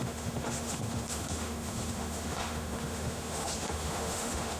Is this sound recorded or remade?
remade